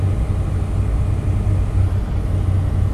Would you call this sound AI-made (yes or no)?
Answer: no